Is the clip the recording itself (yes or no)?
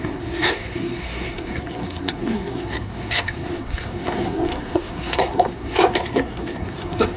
no